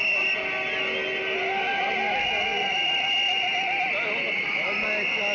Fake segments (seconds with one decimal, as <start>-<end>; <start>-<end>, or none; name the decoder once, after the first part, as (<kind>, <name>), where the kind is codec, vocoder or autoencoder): none